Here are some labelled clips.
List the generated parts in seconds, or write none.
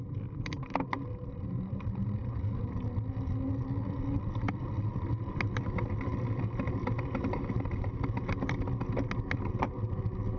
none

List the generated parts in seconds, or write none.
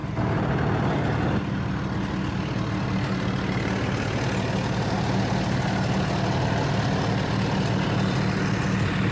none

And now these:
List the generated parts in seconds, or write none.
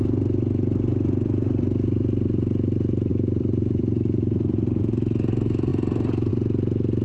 3.1-4.8 (vocoder, BigVGAN v2)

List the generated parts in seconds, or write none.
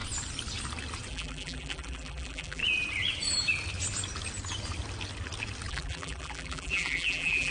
1.1-2.6 (vocoder, BigVGAN v2); 5.7-7.5